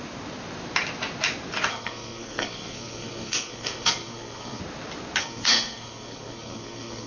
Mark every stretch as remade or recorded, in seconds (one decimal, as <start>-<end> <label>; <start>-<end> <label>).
0.0-1.7 recorded; 1.7-4.6 remade; 4.6-5.2 recorded; 5.2-7.1 remade